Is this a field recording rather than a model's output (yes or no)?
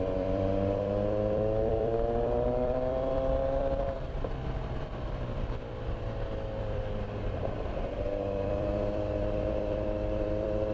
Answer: no